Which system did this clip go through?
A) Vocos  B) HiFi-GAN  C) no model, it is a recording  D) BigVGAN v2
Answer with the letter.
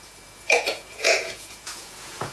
A